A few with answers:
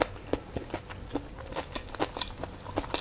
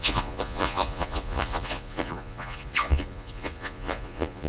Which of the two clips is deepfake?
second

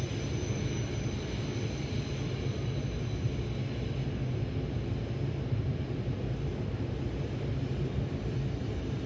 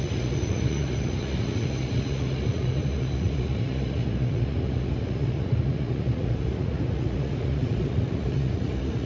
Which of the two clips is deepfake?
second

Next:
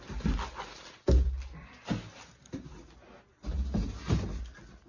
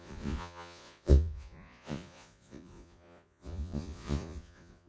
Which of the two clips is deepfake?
second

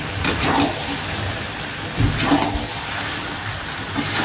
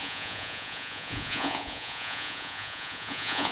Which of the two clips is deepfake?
second